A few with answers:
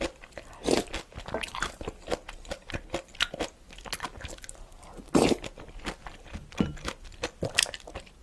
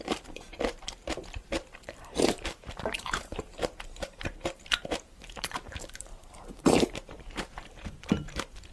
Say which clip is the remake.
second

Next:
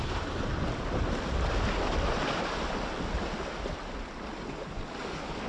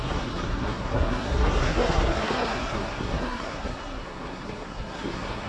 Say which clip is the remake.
second